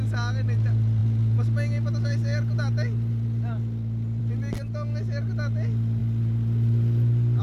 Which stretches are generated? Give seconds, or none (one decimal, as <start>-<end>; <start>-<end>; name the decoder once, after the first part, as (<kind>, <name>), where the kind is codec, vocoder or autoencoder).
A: none